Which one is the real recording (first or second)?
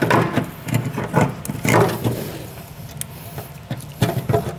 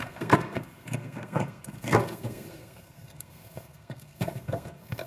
first